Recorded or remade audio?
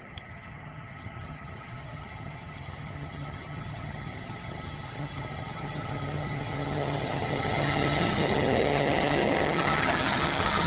remade